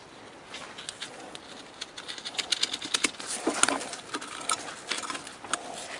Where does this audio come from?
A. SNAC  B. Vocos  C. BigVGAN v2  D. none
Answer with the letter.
D